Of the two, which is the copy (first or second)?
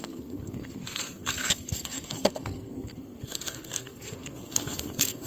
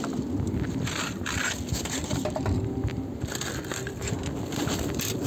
first